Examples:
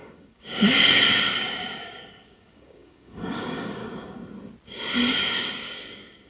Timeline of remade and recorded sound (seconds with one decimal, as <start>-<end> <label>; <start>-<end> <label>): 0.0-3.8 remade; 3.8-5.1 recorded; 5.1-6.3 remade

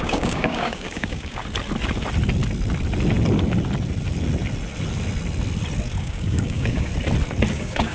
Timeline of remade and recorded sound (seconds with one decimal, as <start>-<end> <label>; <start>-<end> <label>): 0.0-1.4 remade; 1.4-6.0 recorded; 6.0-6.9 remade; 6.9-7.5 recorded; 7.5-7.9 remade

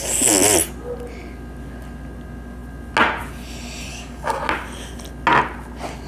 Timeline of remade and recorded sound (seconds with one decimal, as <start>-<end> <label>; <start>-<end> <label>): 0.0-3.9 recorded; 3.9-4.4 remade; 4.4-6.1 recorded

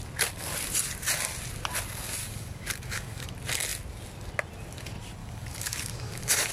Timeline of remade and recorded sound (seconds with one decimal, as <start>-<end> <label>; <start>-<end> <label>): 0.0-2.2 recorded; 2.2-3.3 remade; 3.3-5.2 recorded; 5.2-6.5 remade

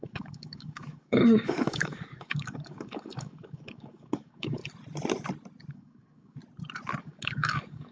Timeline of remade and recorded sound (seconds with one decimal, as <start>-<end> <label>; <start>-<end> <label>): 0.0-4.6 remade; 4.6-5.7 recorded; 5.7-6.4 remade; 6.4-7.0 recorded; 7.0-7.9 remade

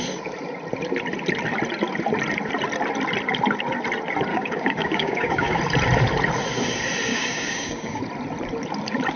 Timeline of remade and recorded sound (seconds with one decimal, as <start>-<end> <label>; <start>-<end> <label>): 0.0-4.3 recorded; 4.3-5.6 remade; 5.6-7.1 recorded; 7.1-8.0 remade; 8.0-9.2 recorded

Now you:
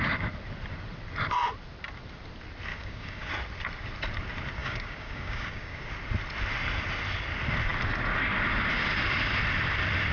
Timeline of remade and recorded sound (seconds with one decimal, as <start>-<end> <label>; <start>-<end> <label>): 0.0-2.7 recorded; 2.7-3.3 remade; 3.3-4.6 recorded; 4.6-5.9 remade; 5.9-10.1 recorded